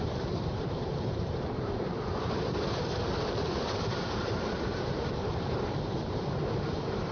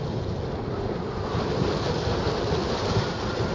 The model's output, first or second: first